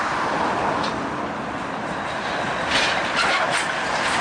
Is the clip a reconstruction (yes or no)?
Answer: no